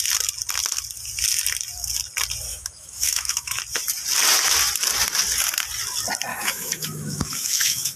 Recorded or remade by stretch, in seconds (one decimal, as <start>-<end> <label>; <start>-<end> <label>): 0.0-2.5 recorded; 2.5-3.6 remade; 3.6-6.3 recorded; 6.3-8.0 remade